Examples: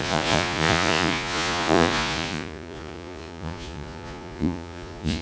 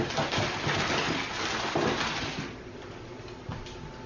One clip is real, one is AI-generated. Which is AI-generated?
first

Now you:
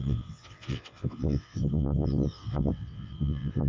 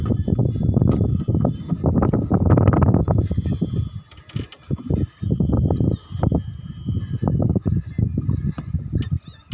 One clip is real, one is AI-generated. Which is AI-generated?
first